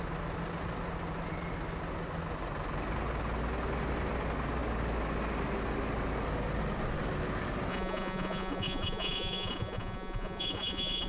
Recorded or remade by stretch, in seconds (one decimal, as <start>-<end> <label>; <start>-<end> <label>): 0.0-7.7 recorded; 7.7-11.1 remade